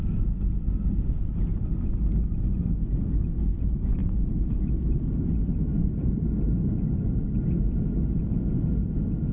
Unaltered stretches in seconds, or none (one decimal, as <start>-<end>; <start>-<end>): 0.0-4.0; 6.2-9.3